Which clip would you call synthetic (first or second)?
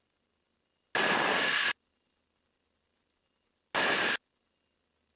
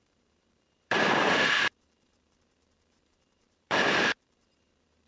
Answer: second